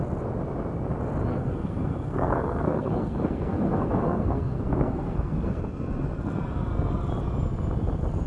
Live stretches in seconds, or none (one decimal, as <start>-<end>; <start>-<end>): 0.0-1.3; 5.6-8.3